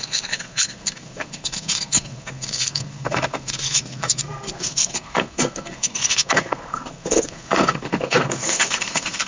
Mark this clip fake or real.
fake